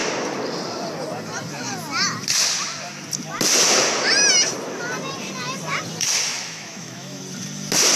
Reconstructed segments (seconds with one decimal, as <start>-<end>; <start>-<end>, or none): 6.3-7.2